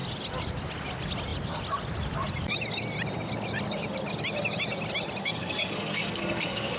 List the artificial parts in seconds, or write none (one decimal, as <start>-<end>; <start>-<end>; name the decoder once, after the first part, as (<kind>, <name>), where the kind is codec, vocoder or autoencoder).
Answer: 5.2-6.8 (codec, SNAC)